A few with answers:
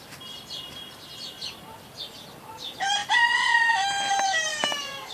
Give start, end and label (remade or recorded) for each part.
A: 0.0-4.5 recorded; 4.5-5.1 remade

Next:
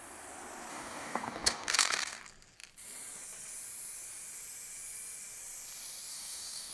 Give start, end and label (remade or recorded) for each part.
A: 0.0-0.7 recorded; 0.7-2.2 remade; 2.2-6.1 recorded; 6.1-6.7 remade

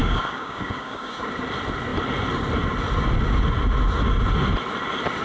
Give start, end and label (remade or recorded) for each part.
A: 0.0-1.2 remade; 1.2-5.2 recorded

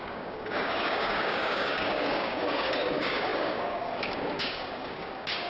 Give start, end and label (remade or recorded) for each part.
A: 0.0-5.5 remade

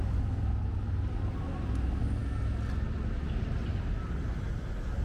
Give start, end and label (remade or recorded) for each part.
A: 0.0-5.0 recorded

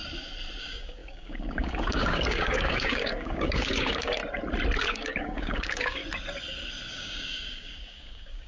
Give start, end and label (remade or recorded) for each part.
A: 0.0-0.6 recorded; 0.6-4.2 remade; 4.2-4.8 recorded; 4.8-6.0 remade; 6.0-6.9 recorded; 6.9-8.5 remade

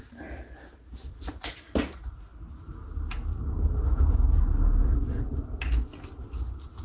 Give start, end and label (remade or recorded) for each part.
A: 0.0-6.8 recorded